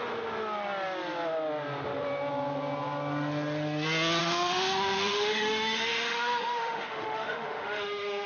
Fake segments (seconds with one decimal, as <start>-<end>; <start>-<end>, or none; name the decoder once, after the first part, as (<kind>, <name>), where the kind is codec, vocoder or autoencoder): 4.2-8.3 (autoencoder, DAC-VAE)